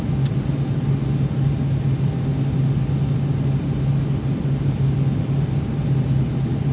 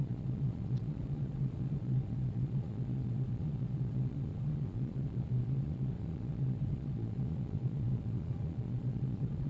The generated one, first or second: second